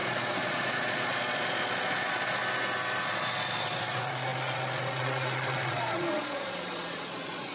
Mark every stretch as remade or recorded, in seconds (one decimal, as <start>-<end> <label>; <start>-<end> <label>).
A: 0.0-2.4 remade; 2.4-3.0 recorded; 3.0-7.5 remade